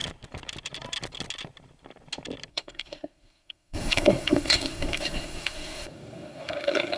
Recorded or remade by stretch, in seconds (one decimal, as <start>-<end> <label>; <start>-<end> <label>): 0.0-2.5 recorded; 2.5-7.0 remade